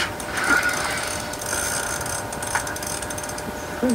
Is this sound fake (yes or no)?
no